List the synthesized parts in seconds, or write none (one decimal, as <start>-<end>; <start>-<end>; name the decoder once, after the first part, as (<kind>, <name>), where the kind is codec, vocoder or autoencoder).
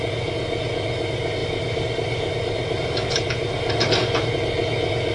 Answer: 1.4-4.3 (vocoder, BigVGAN v2)